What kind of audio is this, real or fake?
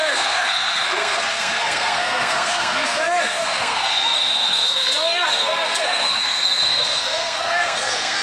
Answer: fake